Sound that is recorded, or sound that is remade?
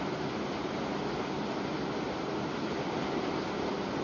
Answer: recorded